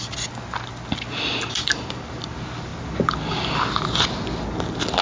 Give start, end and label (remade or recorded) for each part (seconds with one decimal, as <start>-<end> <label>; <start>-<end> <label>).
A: 0.0-5.0 recorded